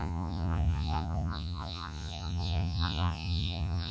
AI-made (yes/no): yes